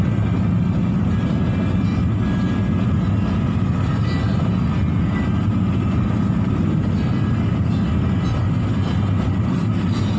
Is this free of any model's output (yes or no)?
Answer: yes